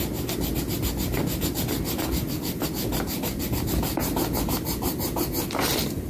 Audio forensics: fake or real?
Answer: real